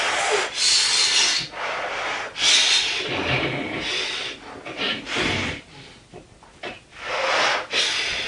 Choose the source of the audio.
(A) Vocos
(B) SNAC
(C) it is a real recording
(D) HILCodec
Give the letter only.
C